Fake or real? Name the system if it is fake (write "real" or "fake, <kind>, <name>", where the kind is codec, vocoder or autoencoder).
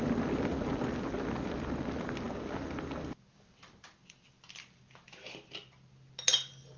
real